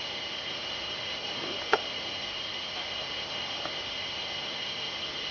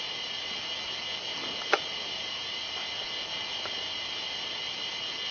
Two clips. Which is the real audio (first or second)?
second